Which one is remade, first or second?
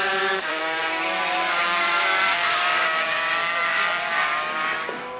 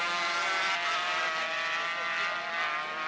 first